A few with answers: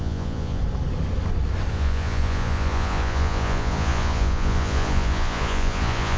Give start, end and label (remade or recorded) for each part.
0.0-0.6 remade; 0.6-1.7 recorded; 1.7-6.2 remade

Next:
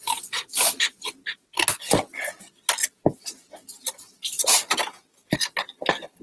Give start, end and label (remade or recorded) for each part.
0.0-2.8 recorded; 2.8-3.3 remade; 3.3-6.2 recorded

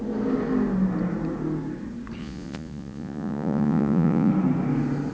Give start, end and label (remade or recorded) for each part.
0.0-2.2 recorded; 2.2-4.3 remade; 4.3-5.1 recorded

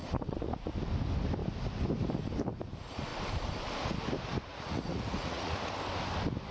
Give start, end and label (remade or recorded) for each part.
0.0-0.7 remade; 0.7-4.5 recorded; 4.5-5.7 remade; 5.7-6.5 recorded

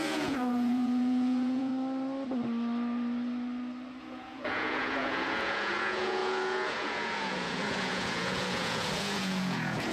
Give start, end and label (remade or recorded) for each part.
0.0-1.7 remade; 1.7-4.0 recorded; 4.0-9.9 remade

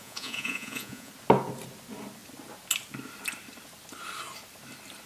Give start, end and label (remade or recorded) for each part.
0.0-1.1 remade; 1.1-5.1 recorded